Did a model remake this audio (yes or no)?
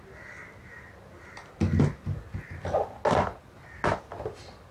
no